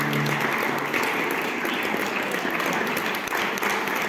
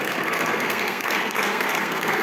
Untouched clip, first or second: first